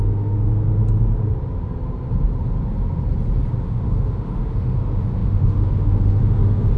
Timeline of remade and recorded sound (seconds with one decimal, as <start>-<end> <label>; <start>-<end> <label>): 0.0-0.5 remade; 0.5-3.6 recorded; 3.6-6.8 remade